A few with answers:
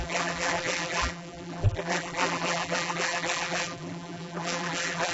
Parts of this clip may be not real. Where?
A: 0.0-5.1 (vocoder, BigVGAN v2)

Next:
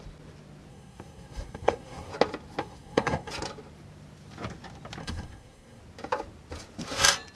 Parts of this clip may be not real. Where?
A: 0.7-2.1 (codec, SNAC); 2.6-3.3; 5.0-5.8

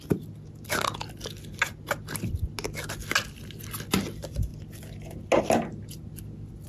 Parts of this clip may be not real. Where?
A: none

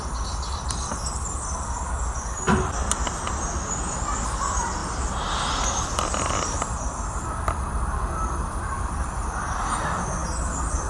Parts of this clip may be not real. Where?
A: 4.8-9.7 (vocoder, BigVGAN v2)